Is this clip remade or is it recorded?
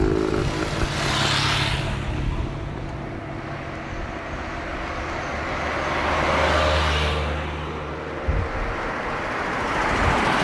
recorded